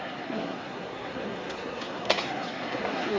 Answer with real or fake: fake